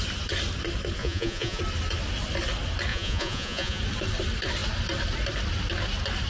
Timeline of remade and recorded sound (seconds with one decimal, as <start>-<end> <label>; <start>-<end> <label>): 0.0-1.0 recorded; 1.0-1.6 remade; 1.6-2.9 recorded; 2.9-3.8 remade; 3.8-6.3 recorded